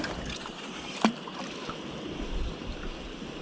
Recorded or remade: recorded